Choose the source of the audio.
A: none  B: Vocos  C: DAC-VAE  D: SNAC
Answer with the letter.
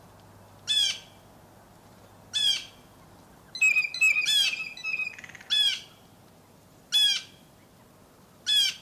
A